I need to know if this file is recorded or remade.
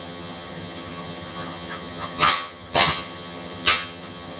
remade